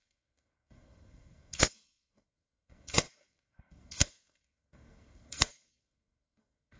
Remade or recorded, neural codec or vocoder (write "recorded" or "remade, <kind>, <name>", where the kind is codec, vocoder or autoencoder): remade, codec, SNAC